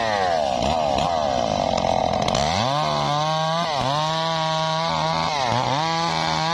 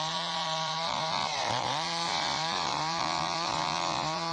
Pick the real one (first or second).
first